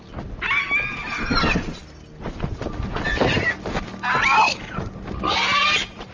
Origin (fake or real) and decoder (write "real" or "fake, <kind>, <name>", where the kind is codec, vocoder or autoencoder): real